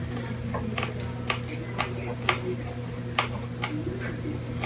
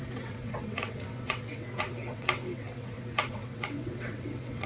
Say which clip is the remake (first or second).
second